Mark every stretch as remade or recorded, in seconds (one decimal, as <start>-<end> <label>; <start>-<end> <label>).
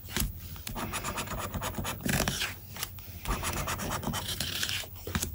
0.0-2.1 remade; 2.1-2.8 recorded; 2.8-5.3 remade